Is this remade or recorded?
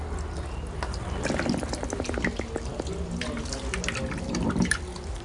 recorded